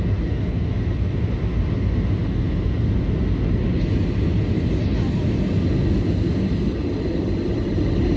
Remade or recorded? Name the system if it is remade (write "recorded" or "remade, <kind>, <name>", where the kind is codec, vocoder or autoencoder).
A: recorded